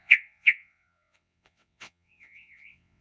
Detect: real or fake fake